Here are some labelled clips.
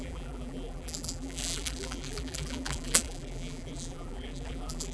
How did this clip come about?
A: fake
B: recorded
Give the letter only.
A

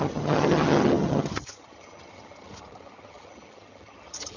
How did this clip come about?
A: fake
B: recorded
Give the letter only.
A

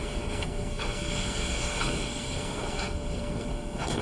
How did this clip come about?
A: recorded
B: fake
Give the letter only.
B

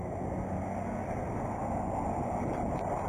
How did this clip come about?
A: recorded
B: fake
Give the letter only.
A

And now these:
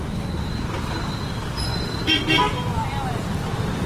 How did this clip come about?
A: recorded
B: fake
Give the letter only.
A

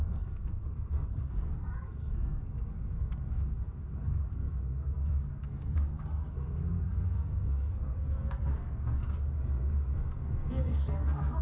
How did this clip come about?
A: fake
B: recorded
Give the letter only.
A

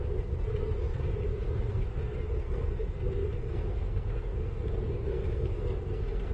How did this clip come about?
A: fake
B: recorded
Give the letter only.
A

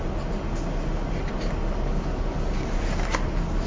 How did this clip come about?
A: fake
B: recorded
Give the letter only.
B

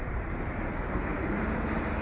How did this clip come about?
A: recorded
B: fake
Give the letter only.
B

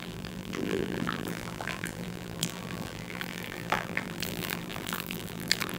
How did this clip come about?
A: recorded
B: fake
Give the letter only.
B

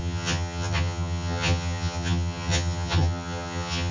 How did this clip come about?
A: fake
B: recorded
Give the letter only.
A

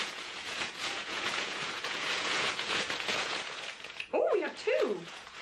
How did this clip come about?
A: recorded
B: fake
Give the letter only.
B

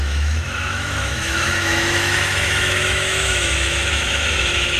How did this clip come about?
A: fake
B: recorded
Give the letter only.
A